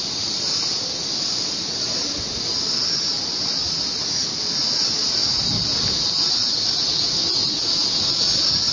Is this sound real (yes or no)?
yes